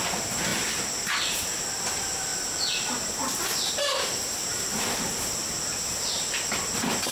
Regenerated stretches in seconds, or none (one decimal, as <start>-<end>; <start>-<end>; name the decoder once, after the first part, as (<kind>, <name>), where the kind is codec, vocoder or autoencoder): 0.0-2.3 (vocoder, BigVGAN v2); 3.7-7.1